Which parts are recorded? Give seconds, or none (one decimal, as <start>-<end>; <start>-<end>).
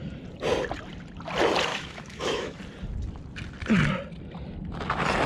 0.0-1.7; 2.6-5.3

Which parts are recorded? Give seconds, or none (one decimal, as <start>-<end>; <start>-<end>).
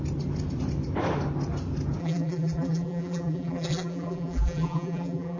0.0-2.0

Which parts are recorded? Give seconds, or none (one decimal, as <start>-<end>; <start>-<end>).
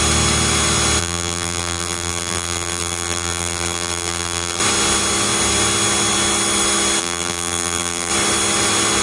0.0-1.0; 4.6-7.0; 8.1-9.0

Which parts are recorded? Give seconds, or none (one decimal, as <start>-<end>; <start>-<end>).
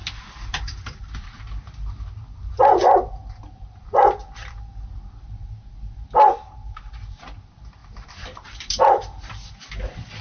1.0-4.2; 4.9-7.8; 9.5-10.2